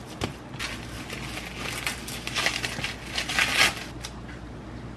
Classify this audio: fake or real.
real